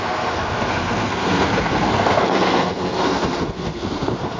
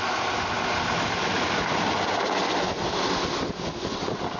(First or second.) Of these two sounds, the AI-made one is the first